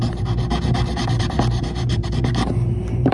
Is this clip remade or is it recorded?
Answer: remade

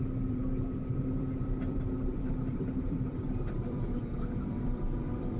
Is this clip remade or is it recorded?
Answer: remade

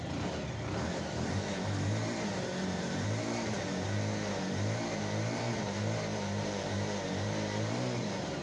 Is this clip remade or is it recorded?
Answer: remade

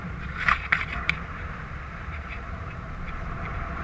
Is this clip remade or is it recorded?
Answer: remade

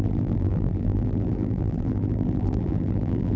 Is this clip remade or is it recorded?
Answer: remade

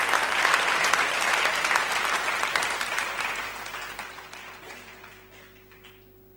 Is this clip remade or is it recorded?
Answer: recorded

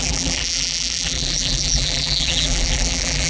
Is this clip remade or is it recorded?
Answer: remade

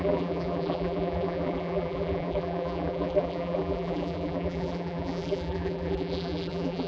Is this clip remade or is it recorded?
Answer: remade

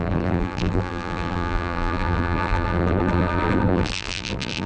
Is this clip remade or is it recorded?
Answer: remade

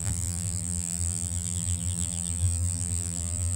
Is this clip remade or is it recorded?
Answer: remade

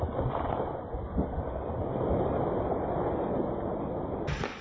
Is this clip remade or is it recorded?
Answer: recorded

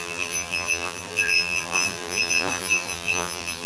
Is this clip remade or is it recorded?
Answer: remade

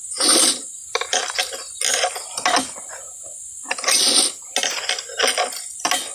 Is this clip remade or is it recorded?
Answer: recorded